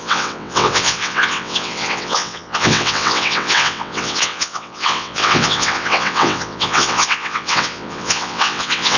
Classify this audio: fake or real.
fake